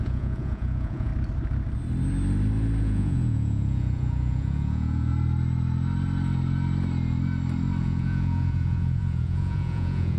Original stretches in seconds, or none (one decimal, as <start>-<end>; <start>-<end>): 1.1-2.8; 5.1-7.8